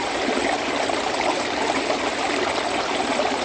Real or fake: real